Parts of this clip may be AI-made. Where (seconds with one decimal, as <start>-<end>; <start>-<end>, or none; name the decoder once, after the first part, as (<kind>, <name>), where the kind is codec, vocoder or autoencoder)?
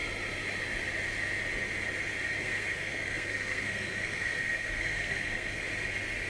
2.4-5.6 (codec, SNAC)